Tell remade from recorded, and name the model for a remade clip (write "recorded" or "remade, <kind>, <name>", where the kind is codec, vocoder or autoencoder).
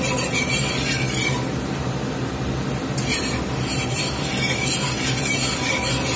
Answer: recorded